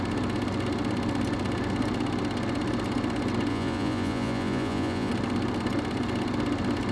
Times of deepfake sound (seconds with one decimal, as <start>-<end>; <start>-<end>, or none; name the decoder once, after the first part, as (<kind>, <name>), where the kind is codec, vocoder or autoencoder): 3.5-5.1 (vocoder, Vocos)